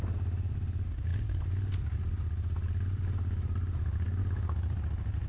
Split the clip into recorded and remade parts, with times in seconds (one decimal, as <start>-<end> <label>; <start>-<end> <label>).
0.0-5.3 recorded